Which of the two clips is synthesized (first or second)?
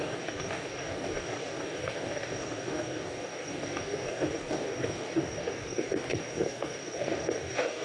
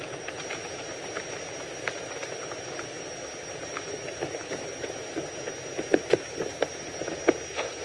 first